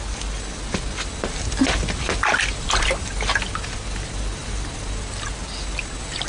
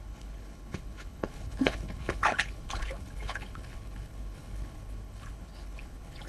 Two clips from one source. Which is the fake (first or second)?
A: second